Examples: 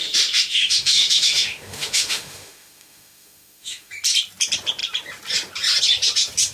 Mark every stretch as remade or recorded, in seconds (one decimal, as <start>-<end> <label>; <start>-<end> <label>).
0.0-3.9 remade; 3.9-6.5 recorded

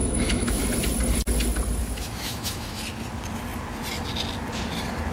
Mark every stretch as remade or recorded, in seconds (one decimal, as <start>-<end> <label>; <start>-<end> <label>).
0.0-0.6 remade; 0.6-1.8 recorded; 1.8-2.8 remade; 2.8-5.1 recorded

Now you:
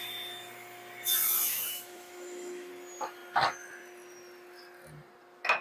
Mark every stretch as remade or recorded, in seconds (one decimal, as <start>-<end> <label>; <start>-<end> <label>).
0.0-1.5 recorded; 1.5-2.7 remade; 2.7-5.6 recorded

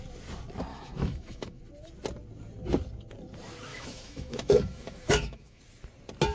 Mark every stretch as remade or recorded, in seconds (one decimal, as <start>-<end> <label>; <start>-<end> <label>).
0.0-0.7 recorded; 0.7-1.6 remade; 1.6-3.7 recorded; 3.7-5.6 remade; 5.6-6.3 recorded